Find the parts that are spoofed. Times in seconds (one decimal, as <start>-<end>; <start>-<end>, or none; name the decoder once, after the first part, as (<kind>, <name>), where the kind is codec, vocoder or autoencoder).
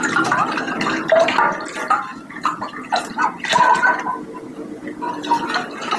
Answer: 2.1-3.0 (vocoder, Vocos)